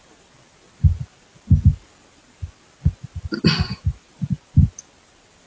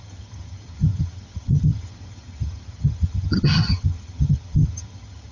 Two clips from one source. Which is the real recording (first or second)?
first